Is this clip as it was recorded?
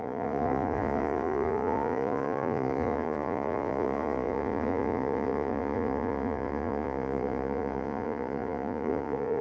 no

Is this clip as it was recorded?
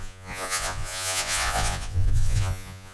no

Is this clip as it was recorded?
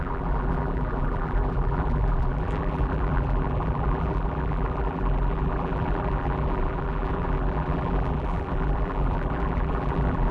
no